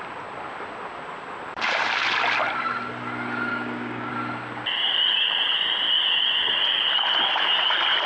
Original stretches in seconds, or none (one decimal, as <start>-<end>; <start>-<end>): 0.0-3.5; 4.1-8.1